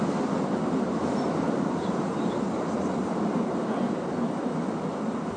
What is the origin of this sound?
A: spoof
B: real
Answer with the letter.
A